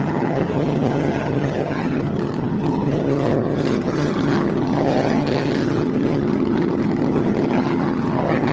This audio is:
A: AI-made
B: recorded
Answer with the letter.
A